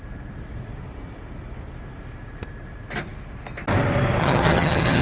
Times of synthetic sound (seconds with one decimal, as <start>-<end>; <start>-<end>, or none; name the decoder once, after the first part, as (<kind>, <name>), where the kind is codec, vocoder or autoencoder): 4.2-5.0 (vocoder, HiFi-GAN)